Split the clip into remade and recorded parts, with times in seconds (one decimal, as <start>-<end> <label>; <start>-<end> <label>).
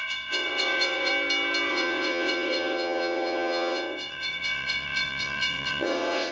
0.0-1.1 remade; 1.1-1.7 recorded; 1.7-6.3 remade